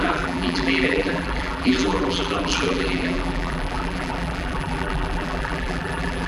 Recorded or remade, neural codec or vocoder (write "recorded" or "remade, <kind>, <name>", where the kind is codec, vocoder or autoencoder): remade, vocoder, BigVGAN v2